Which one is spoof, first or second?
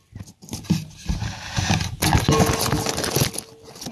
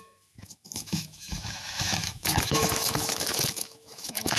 second